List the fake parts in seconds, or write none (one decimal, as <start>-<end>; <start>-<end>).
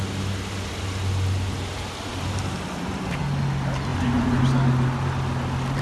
2.1-3.2